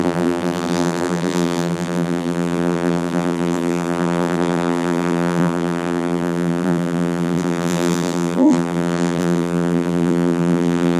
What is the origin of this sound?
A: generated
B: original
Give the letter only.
A